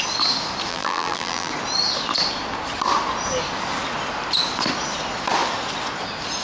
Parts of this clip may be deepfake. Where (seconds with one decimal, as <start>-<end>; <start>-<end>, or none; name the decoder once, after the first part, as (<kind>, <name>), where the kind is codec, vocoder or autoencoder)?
0.7-1.5 (vocoder, BigVGAN v2)